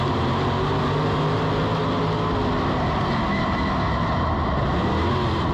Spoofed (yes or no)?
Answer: no